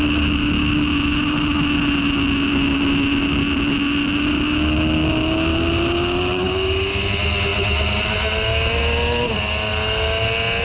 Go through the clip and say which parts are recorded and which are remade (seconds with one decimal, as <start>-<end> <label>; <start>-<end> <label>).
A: 0.0-10.6 recorded